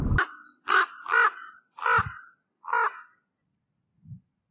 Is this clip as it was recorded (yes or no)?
yes